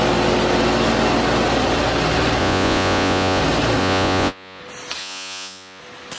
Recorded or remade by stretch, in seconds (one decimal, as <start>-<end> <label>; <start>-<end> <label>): 0.0-2.4 recorded; 2.4-3.4 remade; 3.4-3.8 recorded; 3.8-4.6 remade; 4.6-5.0 recorded; 5.0-5.8 remade; 5.8-6.2 recorded